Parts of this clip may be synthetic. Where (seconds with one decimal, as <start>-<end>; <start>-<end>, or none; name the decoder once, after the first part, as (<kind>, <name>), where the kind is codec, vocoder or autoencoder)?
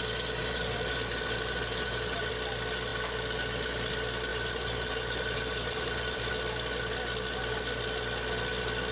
0.4-2.3 (vocoder, BigVGAN v2); 4.3-6.3